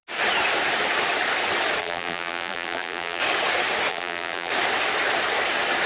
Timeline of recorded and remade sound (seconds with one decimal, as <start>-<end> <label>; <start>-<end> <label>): 0.0-1.8 recorded; 1.8-3.2 remade; 3.2-3.9 recorded; 3.9-4.5 remade; 4.5-5.9 recorded